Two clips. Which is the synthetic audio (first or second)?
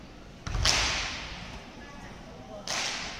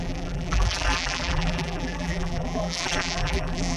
second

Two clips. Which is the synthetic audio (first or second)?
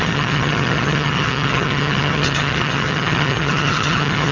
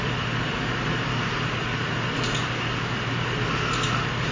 first